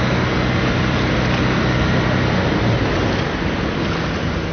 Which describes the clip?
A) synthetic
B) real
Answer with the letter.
B